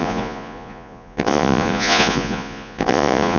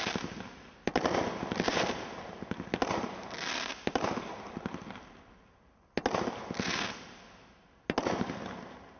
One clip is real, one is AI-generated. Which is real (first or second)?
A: second